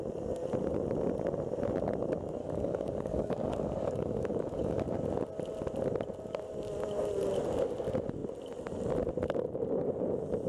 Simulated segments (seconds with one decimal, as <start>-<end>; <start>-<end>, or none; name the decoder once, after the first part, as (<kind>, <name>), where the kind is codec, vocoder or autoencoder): 2.4-4.8 (codec, DAC)